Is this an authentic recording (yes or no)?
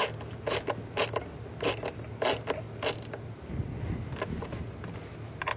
yes